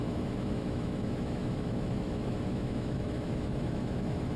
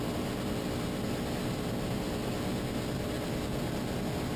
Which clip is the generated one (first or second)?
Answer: first